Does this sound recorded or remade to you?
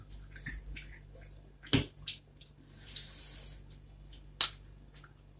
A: recorded